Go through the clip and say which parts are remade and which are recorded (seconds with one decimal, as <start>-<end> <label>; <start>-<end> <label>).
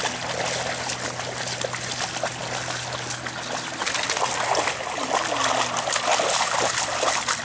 0.0-7.4 recorded